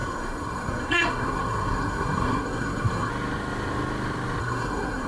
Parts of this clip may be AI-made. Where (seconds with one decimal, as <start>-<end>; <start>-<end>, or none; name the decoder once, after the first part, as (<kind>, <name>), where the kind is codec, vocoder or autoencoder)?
0.0-3.1 (codec, SNAC); 4.4-5.1